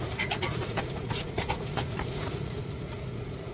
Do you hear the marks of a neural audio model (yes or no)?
yes